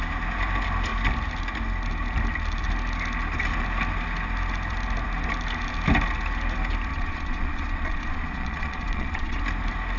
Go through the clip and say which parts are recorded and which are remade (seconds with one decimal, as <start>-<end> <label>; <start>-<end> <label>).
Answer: 0.0-6.9 recorded; 6.9-9.4 remade; 9.4-10.0 recorded